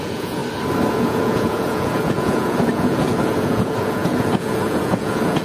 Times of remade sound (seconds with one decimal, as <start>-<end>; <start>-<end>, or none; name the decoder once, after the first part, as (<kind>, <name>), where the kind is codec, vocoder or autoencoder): 0.0-0.4 (vocoder, Vocos); 0.9-5.4